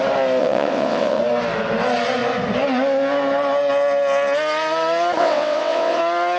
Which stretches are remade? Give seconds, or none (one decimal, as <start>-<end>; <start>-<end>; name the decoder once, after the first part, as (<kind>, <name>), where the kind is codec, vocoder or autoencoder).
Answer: 0.4-1.2 (vocoder, WaveNeXt); 5.2-6.0